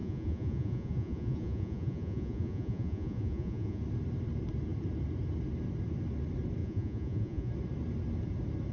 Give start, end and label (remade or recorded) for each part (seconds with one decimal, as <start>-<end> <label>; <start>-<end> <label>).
0.0-3.8 remade; 3.8-6.6 recorded; 6.6-7.5 remade; 7.5-8.7 recorded